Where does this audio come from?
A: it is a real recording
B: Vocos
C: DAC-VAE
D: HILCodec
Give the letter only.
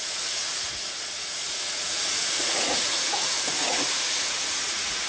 B